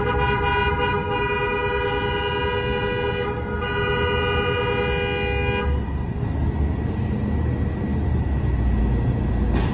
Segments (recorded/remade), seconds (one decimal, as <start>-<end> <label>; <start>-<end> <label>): 0.0-9.7 recorded